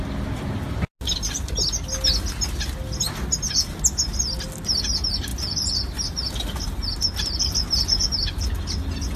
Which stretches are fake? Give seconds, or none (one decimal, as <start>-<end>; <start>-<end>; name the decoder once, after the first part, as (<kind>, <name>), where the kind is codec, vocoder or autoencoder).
none